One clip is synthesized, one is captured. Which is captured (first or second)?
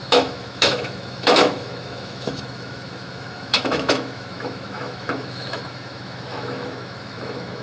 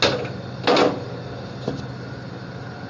second